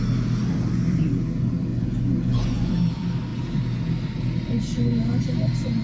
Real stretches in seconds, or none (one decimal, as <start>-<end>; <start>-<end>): 0.0-1.7; 2.7-5.8